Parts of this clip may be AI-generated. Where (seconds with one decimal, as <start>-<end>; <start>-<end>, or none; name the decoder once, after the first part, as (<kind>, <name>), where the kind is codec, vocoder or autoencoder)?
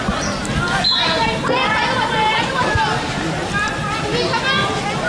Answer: none